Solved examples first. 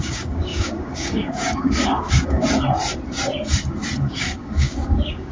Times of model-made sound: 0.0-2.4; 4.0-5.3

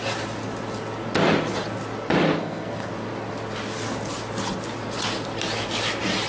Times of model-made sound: 2.4-2.9

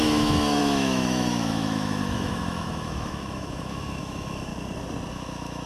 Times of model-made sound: 0.0-4.5; 5.1-5.7